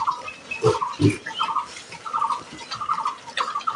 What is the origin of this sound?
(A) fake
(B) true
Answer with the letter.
B